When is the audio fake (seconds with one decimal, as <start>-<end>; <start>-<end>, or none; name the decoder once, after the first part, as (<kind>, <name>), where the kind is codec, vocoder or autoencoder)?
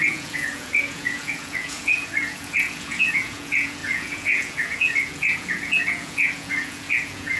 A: 0.0-7.4 (vocoder, Vocos)